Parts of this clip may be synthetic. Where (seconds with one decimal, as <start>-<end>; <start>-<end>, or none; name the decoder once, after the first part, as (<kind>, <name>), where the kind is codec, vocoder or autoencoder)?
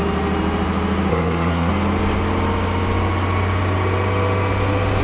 1.1-1.7 (codec, SNAC)